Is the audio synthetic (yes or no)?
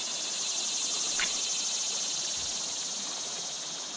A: no